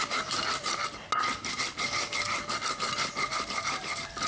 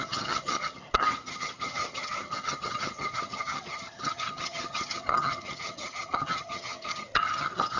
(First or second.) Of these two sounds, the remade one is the second